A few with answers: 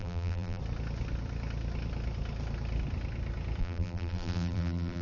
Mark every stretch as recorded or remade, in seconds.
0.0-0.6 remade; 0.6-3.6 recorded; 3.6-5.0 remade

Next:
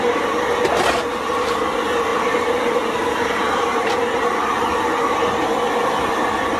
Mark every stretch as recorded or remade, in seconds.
0.0-2.1 recorded; 2.1-3.9 remade; 3.9-6.6 recorded